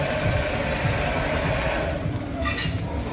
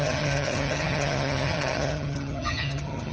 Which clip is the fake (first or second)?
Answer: second